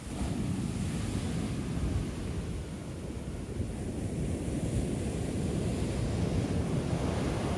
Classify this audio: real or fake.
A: real